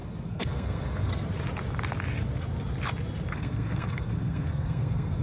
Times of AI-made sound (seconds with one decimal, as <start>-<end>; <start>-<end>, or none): 0.0-1.1; 3.3-5.2